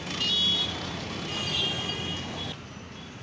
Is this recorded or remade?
recorded